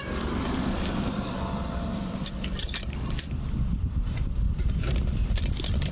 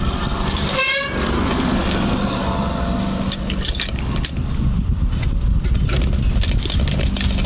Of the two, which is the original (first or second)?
second